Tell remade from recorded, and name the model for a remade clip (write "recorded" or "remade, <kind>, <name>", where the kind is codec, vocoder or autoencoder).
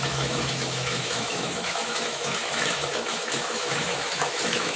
remade, autoencoder, DAC-VAE